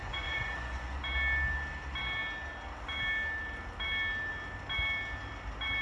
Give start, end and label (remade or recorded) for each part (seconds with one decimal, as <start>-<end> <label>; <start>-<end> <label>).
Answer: 0.0-1.0 remade; 1.0-5.8 recorded